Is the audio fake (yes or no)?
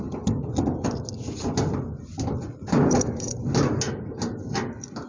no